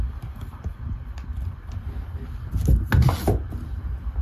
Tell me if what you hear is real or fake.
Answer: real